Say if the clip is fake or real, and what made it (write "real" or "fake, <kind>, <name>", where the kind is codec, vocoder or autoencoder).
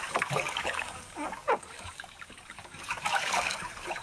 fake, codec, DAC